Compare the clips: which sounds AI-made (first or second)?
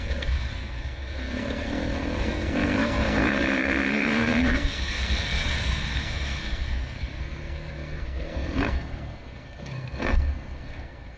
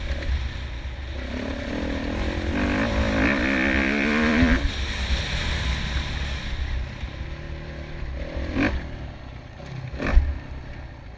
first